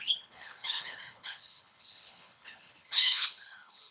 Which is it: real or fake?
fake